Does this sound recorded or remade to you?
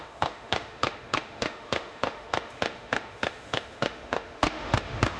remade